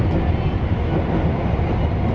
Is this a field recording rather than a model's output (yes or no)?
yes